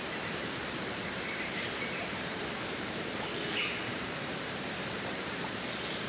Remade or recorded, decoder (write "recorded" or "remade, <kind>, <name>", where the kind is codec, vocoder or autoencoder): remade, vocoder, BigVGAN v2